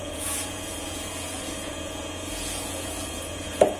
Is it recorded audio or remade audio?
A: remade